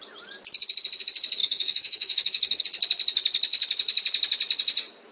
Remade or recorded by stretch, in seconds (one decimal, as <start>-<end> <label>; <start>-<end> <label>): 0.0-1.4 recorded; 1.4-2.6 remade; 2.6-5.1 recorded